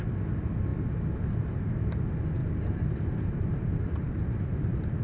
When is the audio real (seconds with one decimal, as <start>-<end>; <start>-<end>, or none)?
0.0-2.4